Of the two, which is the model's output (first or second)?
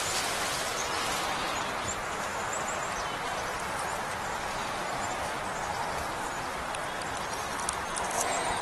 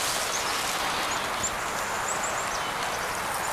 first